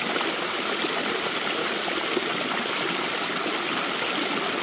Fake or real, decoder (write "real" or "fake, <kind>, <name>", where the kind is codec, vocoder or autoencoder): real